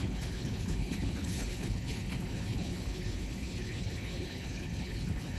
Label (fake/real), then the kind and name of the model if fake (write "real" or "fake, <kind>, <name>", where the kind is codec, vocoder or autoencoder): fake, codec, HILCodec